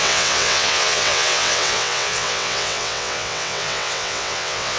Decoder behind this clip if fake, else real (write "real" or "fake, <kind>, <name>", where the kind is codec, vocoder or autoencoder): fake, vocoder, WaveNeXt